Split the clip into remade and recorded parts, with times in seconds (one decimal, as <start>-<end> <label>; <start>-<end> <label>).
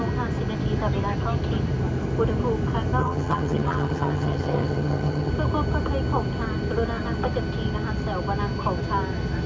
0.0-3.0 recorded; 3.0-5.3 remade; 5.3-9.5 recorded